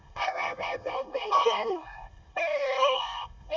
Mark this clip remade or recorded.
remade